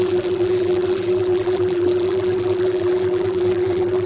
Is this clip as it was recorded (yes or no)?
no